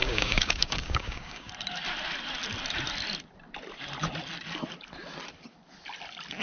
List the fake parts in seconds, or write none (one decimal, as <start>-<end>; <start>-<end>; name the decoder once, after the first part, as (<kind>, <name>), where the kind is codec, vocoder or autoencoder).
0.0-1.5 (codec, DAC)